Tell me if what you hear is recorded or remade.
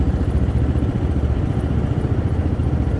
remade